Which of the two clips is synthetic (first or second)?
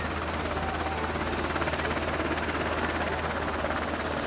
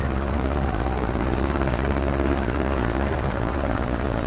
second